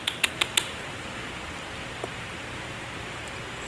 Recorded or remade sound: recorded